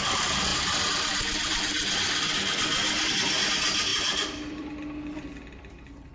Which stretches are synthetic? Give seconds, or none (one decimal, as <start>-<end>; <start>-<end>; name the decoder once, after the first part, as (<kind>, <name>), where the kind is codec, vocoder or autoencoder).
3.9-6.1 (vocoder, BigVGAN v2)